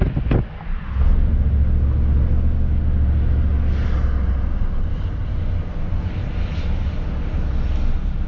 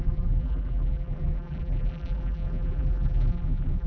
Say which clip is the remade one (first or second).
second